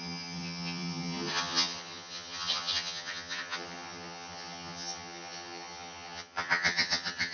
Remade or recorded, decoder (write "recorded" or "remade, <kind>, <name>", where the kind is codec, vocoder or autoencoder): remade, vocoder, HiFi-GAN